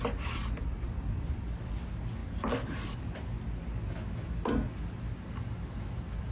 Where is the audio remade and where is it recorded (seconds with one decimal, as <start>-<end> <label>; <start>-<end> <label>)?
0.0-6.3 recorded